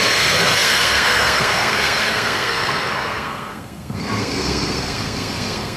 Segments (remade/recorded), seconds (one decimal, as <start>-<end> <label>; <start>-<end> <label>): 0.0-5.8 remade